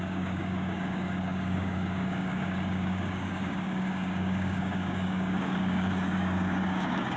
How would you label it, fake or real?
fake